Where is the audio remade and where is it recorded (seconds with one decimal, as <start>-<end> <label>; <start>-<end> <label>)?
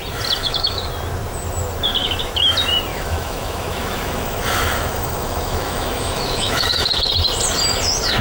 0.0-0.4 recorded; 0.4-0.9 remade; 0.9-2.0 recorded; 2.0-2.5 remade; 2.5-2.9 recorded; 2.9-7.1 remade; 7.1-8.2 recorded